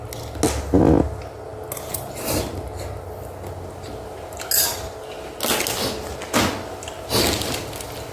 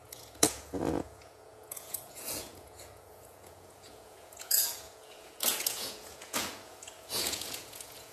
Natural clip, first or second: first